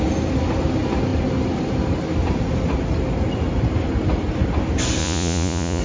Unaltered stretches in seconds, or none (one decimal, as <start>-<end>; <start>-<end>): 0.0-5.0